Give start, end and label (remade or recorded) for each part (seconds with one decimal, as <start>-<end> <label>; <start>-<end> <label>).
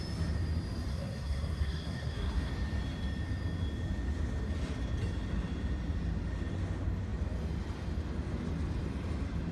0.0-0.9 recorded; 0.9-2.5 remade; 2.5-9.5 recorded